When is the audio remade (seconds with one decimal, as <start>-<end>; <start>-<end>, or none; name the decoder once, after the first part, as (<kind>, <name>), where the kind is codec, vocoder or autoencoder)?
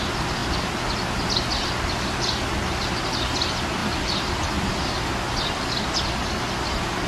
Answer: none